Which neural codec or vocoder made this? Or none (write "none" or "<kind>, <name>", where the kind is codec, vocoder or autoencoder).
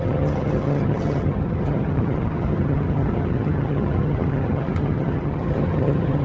vocoder, HiFi-GAN